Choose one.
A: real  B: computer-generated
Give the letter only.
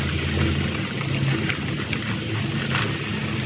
A